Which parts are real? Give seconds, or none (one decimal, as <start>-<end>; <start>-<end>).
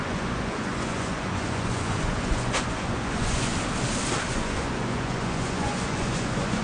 3.5-4.3